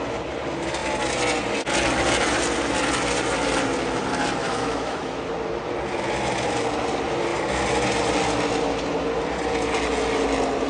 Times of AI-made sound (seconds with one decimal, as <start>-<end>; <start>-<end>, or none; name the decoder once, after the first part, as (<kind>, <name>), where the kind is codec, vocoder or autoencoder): 4.4-5.3 (autoencoder, DAC-VAE)